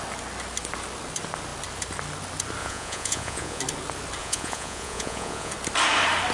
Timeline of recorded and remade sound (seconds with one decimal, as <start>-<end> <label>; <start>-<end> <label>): 0.0-2.6 recorded; 2.6-3.6 remade; 3.6-4.2 recorded; 4.2-5.5 remade; 5.5-6.3 recorded